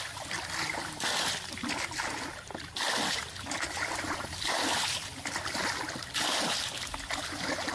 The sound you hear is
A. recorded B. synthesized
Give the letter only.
A